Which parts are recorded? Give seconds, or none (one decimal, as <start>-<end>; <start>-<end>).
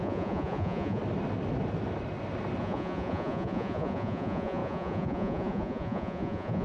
1.0-2.6